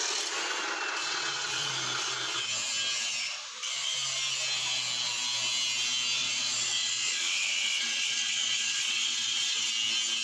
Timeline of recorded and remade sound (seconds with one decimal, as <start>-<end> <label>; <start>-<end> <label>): 0.0-1.0 recorded; 1.0-1.7 remade; 1.7-6.2 recorded; 6.2-9.7 remade; 9.7-10.2 recorded

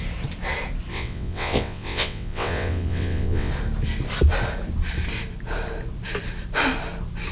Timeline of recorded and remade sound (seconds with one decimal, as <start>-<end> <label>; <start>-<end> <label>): 0.0-0.9 recorded; 0.9-3.5 remade; 3.5-7.3 recorded

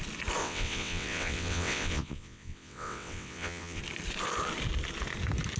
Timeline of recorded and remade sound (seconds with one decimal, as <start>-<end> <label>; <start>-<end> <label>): 0.0-0.4 recorded; 0.4-3.8 remade; 3.8-5.6 recorded

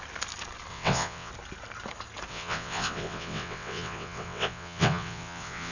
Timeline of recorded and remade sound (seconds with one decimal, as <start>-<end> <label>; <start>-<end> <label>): 0.0-0.7 recorded; 0.7-1.3 remade; 1.3-2.3 recorded; 2.3-5.7 remade

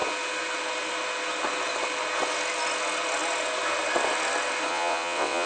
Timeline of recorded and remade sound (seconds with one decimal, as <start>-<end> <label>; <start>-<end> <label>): 0.0-4.7 recorded; 4.7-5.5 remade

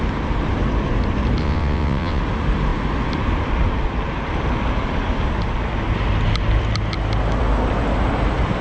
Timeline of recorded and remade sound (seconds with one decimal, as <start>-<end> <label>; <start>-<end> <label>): 0.0-1.4 recorded; 1.4-2.2 remade; 2.2-8.6 recorded

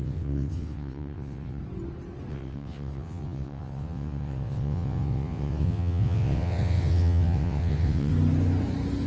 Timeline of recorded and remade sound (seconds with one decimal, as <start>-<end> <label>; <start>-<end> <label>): 0.0-1.6 remade; 1.6-2.3 recorded; 2.3-8.1 remade; 8.1-9.1 recorded